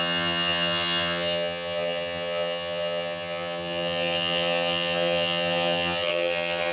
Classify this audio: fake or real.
fake